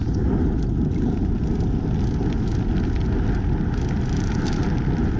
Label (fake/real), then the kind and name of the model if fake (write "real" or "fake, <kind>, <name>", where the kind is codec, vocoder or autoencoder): real